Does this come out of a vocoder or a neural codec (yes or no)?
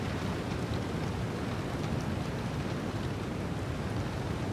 no